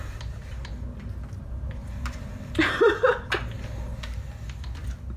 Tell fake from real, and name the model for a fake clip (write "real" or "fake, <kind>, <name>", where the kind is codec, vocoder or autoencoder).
real